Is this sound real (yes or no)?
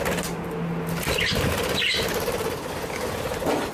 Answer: yes